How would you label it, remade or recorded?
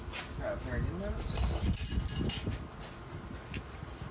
recorded